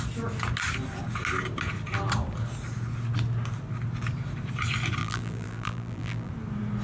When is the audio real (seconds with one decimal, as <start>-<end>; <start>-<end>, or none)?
0.0-5.0; 6.3-6.8